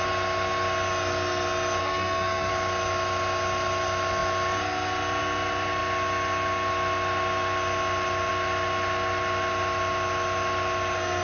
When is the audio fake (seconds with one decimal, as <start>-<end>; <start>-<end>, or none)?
1.8-2.5